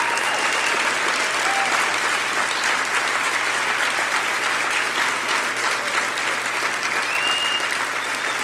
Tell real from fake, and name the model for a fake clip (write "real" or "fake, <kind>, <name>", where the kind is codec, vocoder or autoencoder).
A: real